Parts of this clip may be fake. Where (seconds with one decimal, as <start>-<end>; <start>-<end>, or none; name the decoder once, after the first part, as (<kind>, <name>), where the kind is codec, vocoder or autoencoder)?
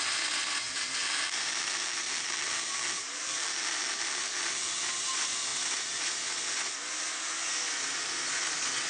1.0-4.7 (vocoder, BigVGAN v2)